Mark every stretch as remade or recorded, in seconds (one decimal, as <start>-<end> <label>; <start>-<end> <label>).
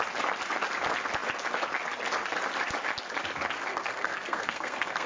0.0-3.7 recorded; 3.7-5.1 remade